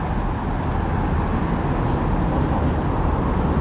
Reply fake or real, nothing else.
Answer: real